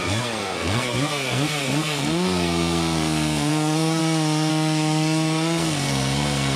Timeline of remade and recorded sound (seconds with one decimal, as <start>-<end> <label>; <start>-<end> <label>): 0.0-4.0 remade; 4.0-4.5 recorded; 4.5-6.6 remade